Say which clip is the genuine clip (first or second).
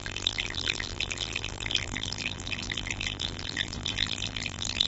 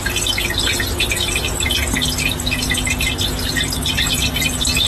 second